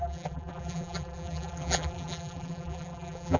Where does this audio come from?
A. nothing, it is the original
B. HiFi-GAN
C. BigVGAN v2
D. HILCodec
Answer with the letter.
C